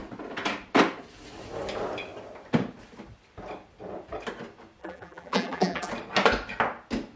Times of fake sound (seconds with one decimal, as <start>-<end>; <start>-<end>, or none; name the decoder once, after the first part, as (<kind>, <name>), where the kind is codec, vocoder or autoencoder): 4.8-5.9 (vocoder, BigVGAN v2)